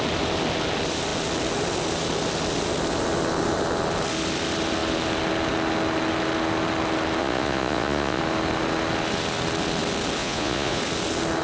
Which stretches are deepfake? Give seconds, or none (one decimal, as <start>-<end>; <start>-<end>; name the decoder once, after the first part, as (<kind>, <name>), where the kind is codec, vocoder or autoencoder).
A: 7.2-8.2 (vocoder, Vocos); 10.2-10.8